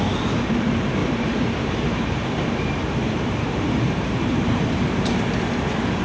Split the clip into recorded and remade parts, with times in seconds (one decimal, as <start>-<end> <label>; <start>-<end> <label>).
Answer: 0.0-1.0 recorded; 1.0-4.6 remade; 4.6-6.0 recorded